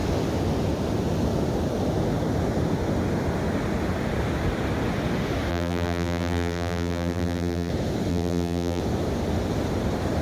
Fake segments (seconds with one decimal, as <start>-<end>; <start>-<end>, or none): 5.5-7.7; 8.1-8.8